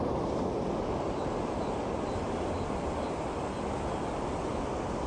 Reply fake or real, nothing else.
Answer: real